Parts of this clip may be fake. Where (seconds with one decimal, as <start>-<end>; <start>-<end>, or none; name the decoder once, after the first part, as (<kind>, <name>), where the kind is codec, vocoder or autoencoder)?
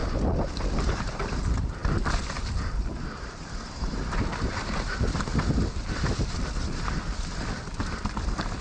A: 0.8-5.3 (vocoder, BigVGAN v2); 6.1-8.6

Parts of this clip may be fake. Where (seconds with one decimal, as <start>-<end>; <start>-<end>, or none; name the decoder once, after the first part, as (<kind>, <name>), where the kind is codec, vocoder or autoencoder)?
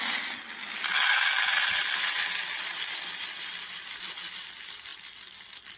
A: none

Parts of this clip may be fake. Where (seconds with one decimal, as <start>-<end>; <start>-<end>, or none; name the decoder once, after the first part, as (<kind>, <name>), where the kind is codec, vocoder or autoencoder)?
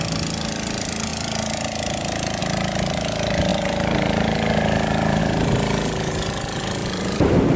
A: 3.5-5.2 (vocoder, BigVGAN v2); 6.8-7.6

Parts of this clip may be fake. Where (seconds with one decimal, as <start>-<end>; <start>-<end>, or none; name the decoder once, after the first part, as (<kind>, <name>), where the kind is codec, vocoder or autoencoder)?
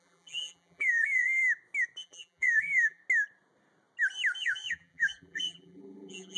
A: 0.0-1.4 (vocoder, BigVGAN v2); 2.0-3.0; 4.4-6.4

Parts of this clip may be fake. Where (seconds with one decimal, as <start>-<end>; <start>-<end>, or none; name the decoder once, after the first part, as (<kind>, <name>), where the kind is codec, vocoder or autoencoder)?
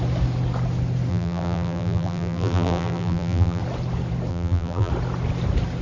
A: 1.1-3.6 (vocoder, BigVGAN v2); 4.3-4.9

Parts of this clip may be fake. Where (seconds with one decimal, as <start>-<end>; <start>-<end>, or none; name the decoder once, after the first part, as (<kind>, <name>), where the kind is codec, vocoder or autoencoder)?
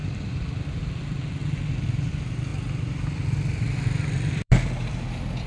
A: 0.0-1.4 (vocoder, BigVGAN v2); 2.1-5.5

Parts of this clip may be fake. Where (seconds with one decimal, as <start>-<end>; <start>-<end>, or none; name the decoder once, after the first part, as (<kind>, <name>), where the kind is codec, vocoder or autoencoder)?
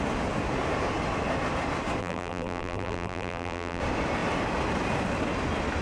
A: 2.0-3.8 (vocoder, BigVGAN v2)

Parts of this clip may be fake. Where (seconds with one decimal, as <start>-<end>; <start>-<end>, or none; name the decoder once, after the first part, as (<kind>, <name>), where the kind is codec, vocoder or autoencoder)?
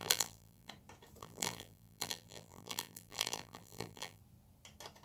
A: 0.0-0.7 (vocoder, BigVGAN v2); 1.2-4.2